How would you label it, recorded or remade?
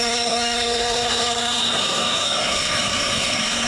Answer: remade